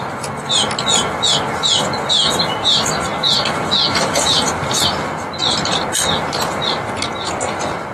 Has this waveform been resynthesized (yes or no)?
no